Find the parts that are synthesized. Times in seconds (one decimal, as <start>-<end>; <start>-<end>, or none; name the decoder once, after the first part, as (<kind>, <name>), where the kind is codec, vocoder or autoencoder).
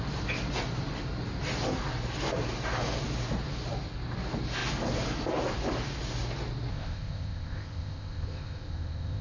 6.7-9.2 (codec, ZipCodec)